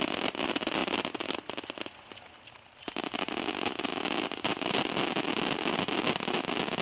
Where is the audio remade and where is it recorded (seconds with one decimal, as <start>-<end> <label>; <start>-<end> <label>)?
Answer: 0.0-6.8 recorded

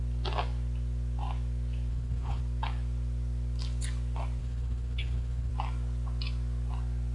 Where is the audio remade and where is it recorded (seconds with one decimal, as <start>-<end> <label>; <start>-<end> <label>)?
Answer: 0.0-1.9 recorded; 1.9-2.4 remade; 2.4-4.4 recorded; 4.4-5.5 remade; 5.5-7.1 recorded

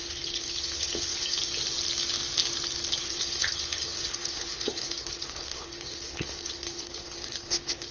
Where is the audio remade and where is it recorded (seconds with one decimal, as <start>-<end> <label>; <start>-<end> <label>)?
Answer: 0.0-1.4 remade; 1.4-3.0 recorded; 3.0-7.9 remade

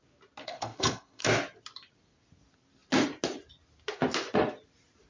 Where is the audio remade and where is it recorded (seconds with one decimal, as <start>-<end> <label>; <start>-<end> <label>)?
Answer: 0.0-0.4 recorded; 0.4-1.2 remade; 1.2-5.1 recorded

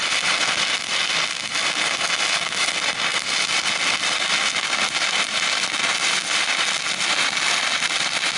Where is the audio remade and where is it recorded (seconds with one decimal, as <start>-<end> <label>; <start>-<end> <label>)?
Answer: 0.0-8.4 recorded

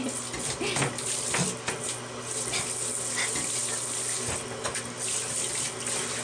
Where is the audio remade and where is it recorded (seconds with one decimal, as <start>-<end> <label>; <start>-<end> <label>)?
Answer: 0.0-6.2 recorded

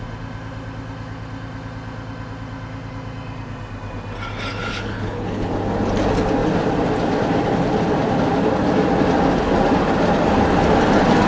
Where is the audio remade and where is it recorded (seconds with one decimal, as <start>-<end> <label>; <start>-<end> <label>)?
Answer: 0.0-4.6 recorded; 4.6-5.5 remade; 5.5-11.3 recorded

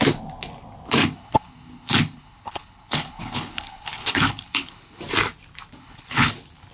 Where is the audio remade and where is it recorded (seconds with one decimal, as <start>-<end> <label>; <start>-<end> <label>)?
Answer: 0.0-1.0 recorded; 1.0-5.0 remade; 5.0-5.8 recorded; 5.8-6.3 remade; 6.3-6.7 recorded